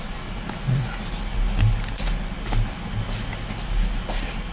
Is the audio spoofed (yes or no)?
no